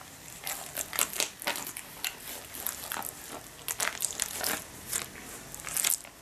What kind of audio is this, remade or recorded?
recorded